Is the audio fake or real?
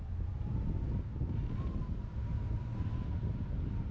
real